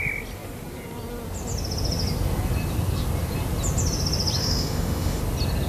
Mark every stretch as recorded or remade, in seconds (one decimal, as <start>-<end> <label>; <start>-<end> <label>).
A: 0.0-4.4 recorded; 4.4-5.2 remade; 5.2-5.7 recorded

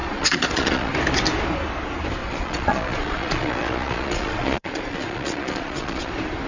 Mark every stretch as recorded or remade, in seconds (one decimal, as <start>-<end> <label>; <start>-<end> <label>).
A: 0.0-0.9 remade; 0.9-2.2 recorded; 2.2-6.1 remade; 6.1-6.5 recorded